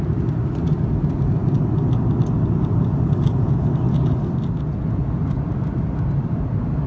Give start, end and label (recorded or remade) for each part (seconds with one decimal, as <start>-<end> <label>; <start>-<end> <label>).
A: 0.0-6.9 recorded